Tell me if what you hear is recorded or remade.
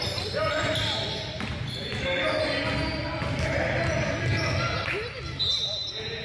recorded